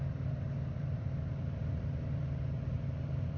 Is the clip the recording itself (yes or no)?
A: no